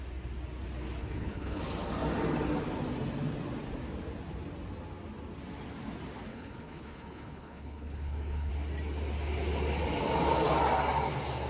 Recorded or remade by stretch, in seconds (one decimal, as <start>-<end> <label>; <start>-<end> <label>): 0.0-1.0 recorded; 1.0-1.6 remade; 1.6-6.3 recorded; 6.3-8.5 remade; 8.5-11.5 recorded